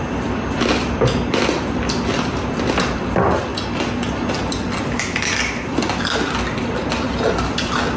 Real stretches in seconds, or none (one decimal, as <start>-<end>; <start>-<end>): 0.0-8.0